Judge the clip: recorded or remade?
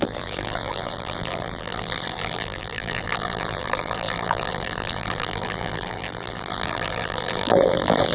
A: remade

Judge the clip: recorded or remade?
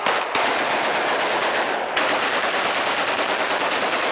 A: recorded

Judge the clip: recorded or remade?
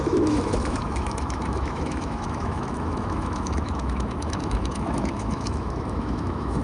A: remade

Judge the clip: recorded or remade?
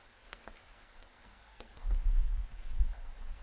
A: remade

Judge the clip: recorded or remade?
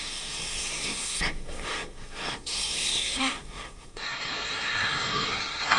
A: remade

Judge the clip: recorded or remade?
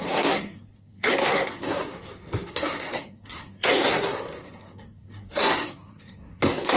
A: remade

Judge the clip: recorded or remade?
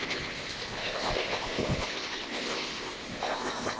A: remade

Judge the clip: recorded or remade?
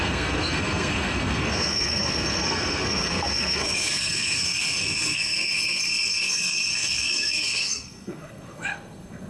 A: remade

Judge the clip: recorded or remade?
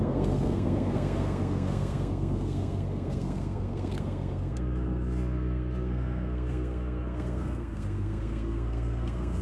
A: remade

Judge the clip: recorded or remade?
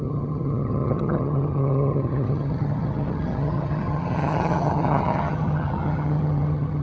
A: remade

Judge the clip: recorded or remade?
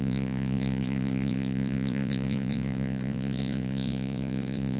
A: remade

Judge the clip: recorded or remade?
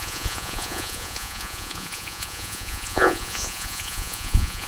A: remade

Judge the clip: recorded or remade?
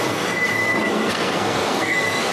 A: remade